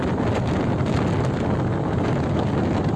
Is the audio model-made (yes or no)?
no